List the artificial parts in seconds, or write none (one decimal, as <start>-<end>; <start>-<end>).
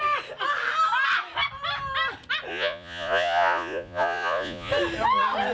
2.5-4.7